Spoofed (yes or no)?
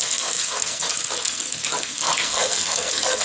yes